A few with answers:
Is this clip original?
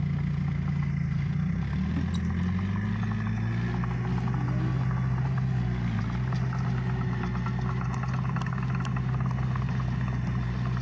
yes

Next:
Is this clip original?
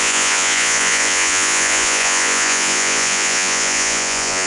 no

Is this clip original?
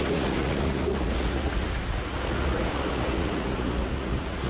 no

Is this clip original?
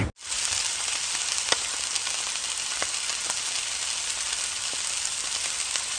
yes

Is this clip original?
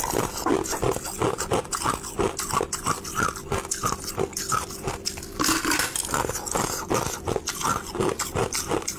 yes